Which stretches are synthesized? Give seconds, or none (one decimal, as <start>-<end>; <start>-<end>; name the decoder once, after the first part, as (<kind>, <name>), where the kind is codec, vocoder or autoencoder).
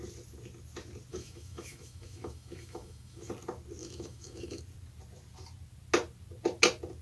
1.1-3.3 (autoencoder, DAC-VAE); 3.8-4.6